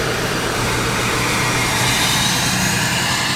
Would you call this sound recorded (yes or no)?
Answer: no